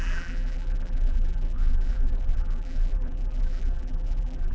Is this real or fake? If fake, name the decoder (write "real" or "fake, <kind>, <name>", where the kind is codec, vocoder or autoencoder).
fake, vocoder, BigVGAN v2